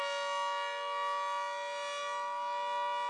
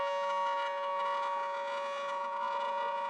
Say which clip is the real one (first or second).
first